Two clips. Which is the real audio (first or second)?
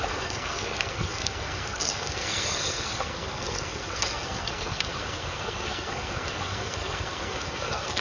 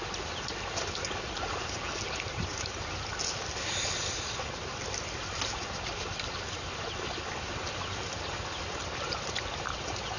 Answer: second